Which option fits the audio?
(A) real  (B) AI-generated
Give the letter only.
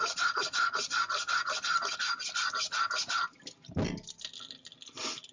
A